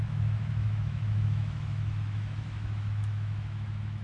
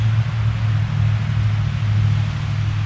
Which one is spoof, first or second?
first